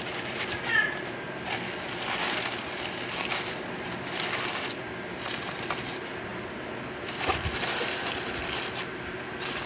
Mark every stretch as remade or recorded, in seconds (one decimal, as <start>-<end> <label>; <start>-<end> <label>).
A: 0.0-9.7 recorded

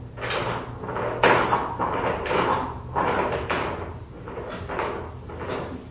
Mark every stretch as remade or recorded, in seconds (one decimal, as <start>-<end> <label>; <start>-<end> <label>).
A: 0.0-1.6 recorded; 1.6-4.9 remade; 4.9-5.9 recorded

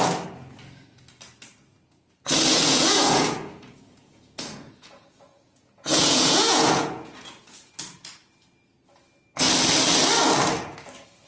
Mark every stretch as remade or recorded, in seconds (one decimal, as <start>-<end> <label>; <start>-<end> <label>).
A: 0.0-2.5 recorded; 2.5-7.7 remade; 7.7-11.3 recorded

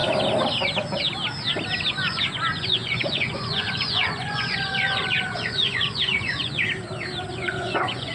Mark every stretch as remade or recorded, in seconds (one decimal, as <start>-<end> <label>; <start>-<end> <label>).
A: 0.0-1.9 recorded; 1.9-6.7 remade; 6.7-7.3 recorded; 7.3-8.1 remade

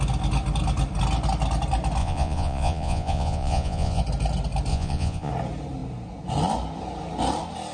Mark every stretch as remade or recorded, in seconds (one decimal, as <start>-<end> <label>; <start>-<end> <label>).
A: 0.0-2.0 recorded; 2.0-4.0 remade; 4.0-4.7 recorded; 4.7-5.3 remade; 5.3-7.7 recorded

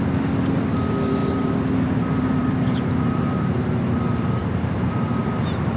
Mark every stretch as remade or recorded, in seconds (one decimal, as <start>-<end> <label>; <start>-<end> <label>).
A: 0.0-1.2 recorded; 1.2-3.7 remade; 3.7-4.4 recorded; 4.4-5.2 remade; 5.2-5.8 recorded

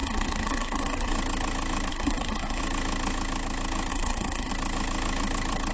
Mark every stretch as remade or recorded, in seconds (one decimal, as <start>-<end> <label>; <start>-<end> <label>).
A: 0.0-1.1 remade; 1.1-1.9 recorded; 1.9-2.6 remade; 2.6-3.9 recorded; 3.9-4.5 remade; 4.5-5.7 recorded